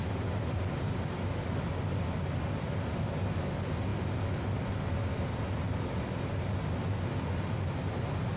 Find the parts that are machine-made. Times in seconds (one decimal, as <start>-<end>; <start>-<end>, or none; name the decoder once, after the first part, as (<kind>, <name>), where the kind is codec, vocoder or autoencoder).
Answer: none